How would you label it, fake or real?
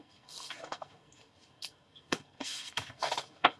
fake